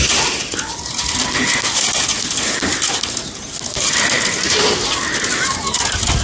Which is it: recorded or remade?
recorded